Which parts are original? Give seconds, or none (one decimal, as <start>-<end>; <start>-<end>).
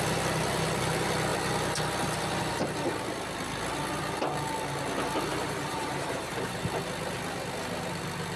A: 0.0-5.3; 6.6-8.4